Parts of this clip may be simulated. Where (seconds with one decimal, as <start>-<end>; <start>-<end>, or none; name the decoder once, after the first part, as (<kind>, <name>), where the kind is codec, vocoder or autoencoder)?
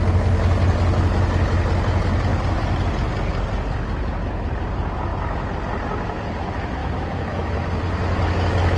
6.8-7.8 (autoencoder, DAC-VAE)